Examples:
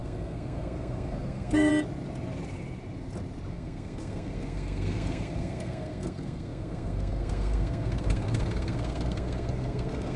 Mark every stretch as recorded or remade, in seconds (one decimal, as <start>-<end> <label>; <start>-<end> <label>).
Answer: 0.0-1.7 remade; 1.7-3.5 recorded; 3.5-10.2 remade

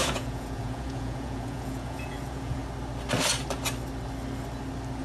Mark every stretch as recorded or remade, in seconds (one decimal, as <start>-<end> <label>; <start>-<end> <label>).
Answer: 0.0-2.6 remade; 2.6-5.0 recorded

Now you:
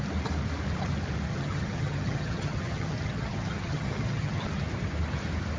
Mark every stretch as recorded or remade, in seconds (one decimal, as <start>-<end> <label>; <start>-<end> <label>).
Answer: 0.0-1.3 recorded; 1.3-4.5 remade; 4.5-5.6 recorded

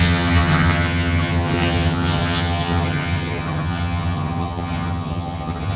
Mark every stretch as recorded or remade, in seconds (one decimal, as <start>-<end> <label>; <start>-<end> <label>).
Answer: 0.0-5.8 remade

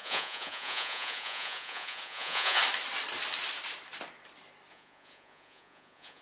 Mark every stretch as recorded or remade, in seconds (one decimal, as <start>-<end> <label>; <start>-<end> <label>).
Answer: 0.0-2.6 remade; 2.6-4.7 recorded; 4.7-6.2 remade

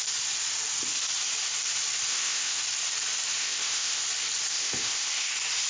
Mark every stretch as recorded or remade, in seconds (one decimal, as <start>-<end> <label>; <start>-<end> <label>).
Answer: 0.0-2.1 recorded; 2.1-2.6 remade; 2.6-3.4 recorded; 3.4-4.0 remade; 4.0-4.5 recorded; 4.5-5.3 remade; 5.3-5.7 recorded

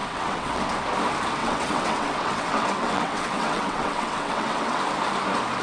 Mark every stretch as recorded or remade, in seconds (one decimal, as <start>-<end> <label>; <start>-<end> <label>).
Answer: 0.0-0.6 remade; 0.6-1.4 recorded; 1.4-4.8 remade; 4.8-5.6 recorded

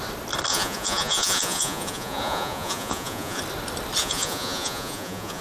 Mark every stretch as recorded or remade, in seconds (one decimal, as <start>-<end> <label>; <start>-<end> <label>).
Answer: 0.0-0.5 recorded; 0.5-3.4 remade; 3.4-4.0 recorded; 4.0-5.4 remade